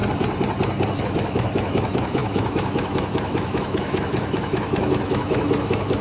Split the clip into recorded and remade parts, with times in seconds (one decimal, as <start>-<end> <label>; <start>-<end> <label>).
0.0-1.0 recorded; 1.0-6.0 remade